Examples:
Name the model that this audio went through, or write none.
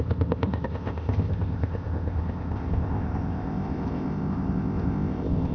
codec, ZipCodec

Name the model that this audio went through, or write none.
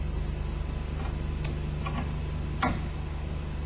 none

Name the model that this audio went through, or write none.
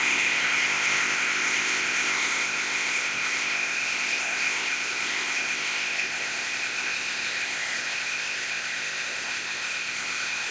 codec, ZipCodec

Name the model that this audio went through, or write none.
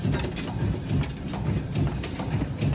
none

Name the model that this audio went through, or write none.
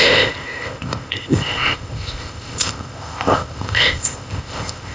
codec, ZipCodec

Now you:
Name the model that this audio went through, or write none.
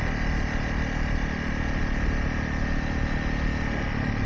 none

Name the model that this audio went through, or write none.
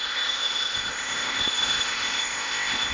codec, ZipCodec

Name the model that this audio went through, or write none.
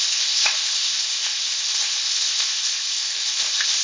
codec, ZipCodec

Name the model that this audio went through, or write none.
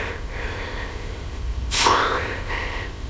codec, ZipCodec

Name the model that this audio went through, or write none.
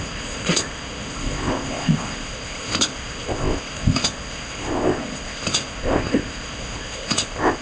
codec, ZipCodec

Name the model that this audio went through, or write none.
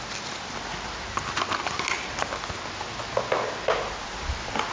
none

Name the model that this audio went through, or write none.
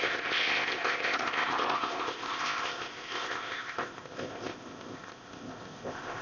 codec, ZipCodec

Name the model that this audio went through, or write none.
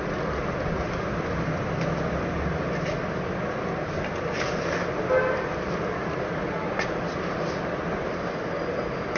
none